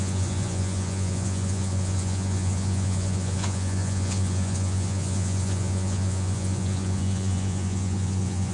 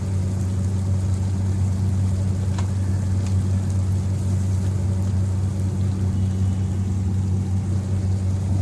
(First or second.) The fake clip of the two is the first